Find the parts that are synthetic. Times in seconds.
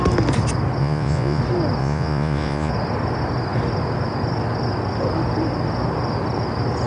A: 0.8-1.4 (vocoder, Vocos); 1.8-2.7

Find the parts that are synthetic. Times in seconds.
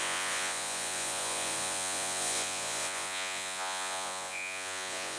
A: 0.0-5.2 (vocoder, Vocos)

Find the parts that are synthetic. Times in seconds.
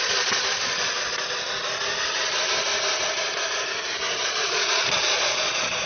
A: 0.0-0.7 (vocoder, Vocos); 4.2-5.9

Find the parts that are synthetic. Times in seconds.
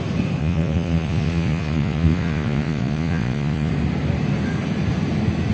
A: 0.4-3.7 (vocoder, Vocos)